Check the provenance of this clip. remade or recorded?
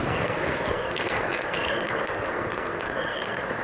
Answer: remade